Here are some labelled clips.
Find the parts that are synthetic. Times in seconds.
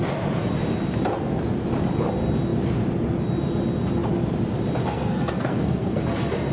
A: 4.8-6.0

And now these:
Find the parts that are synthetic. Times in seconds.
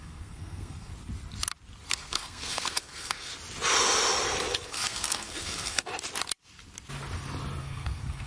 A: 0.0-0.9; 1.9-3.3; 4.7-5.9; 7.6-8.3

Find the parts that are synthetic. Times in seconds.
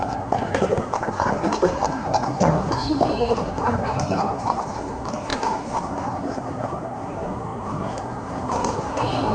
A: 0.0-9.3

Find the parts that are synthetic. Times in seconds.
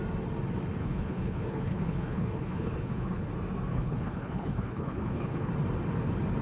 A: 0.8-3.3; 3.7-5.5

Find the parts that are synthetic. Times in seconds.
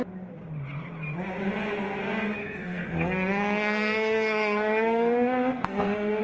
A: 2.4-6.2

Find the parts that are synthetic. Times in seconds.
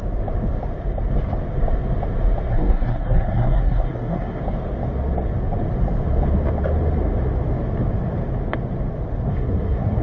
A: 2.5-4.4; 9.3-10.0